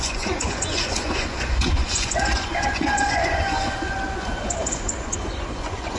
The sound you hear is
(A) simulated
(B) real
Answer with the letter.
A